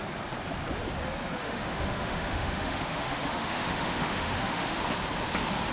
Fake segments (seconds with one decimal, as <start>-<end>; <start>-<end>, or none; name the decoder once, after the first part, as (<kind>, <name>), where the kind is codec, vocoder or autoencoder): 1.4-4.8 (autoencoder, DAC-VAE)